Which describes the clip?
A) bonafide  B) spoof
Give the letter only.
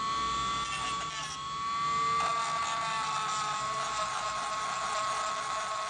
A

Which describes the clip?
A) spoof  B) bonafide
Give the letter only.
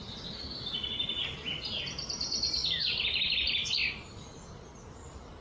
B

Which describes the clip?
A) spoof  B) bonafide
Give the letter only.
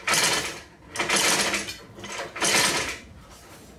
B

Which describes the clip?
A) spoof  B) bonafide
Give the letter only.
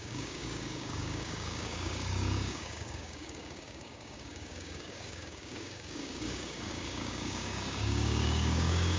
A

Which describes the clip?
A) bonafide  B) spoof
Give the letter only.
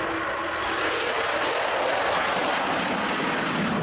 A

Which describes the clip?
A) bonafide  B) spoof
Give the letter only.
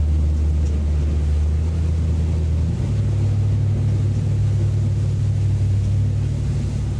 A